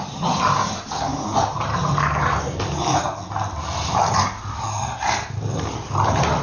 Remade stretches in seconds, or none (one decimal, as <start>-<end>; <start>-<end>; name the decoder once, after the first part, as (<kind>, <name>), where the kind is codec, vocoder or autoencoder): none